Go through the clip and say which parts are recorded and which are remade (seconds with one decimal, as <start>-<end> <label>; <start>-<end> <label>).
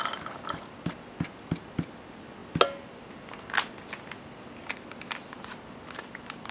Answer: 0.0-6.5 recorded